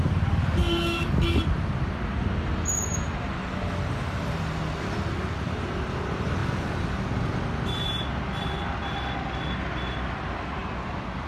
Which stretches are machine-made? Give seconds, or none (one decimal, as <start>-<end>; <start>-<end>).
0.6-1.4